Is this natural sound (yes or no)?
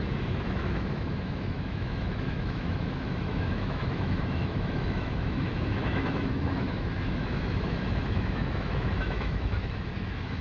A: no